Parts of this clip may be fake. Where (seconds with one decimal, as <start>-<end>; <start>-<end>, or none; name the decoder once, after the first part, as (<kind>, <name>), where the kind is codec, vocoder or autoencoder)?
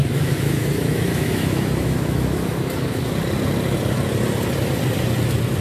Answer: 0.0-3.1 (autoencoder, DAC-VAE)